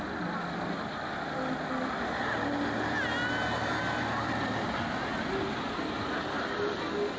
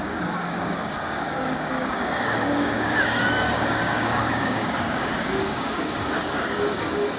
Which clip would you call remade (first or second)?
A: second